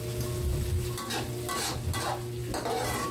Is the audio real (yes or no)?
yes